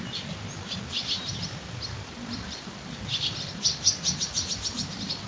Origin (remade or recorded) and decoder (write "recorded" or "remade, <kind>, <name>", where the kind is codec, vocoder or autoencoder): recorded